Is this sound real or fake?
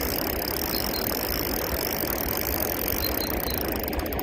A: real